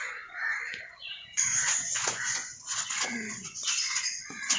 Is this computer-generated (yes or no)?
yes